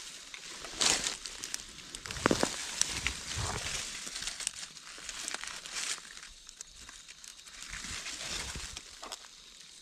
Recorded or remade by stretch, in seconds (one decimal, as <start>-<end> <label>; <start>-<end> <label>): 0.0-9.8 recorded